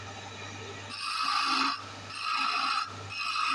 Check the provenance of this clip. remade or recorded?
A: recorded